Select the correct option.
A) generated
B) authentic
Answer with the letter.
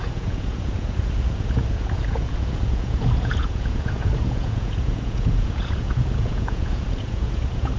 A